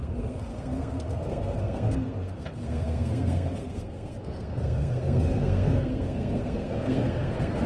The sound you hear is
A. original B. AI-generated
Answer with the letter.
B